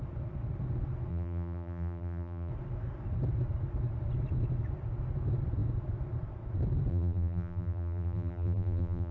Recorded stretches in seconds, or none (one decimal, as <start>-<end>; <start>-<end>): 0.0-1.1; 2.5-6.9